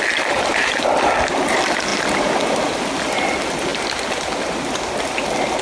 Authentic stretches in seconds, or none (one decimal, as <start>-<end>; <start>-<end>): 0.0-5.6